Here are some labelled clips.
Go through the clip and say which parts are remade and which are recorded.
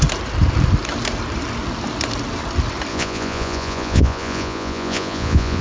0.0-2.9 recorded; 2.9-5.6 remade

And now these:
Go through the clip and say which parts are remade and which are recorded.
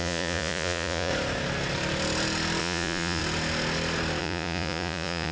0.0-1.1 remade; 1.1-2.6 recorded; 2.6-3.2 remade; 3.2-4.2 recorded; 4.2-5.3 remade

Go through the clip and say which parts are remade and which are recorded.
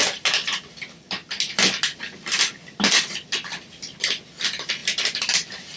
0.0-5.8 recorded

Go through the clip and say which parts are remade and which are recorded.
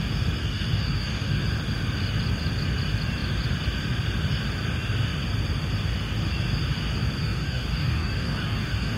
0.0-0.4 recorded; 0.4-1.4 remade; 1.4-7.2 recorded; 7.2-9.0 remade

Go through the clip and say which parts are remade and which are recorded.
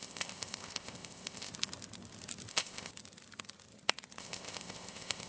0.0-1.5 remade; 1.5-2.5 recorded; 2.5-2.9 remade; 2.9-4.2 recorded; 4.2-5.3 remade